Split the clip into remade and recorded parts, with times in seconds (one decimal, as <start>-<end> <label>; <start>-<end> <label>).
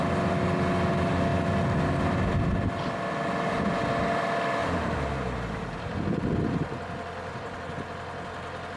0.0-4.6 recorded; 4.6-6.0 remade; 6.0-8.8 recorded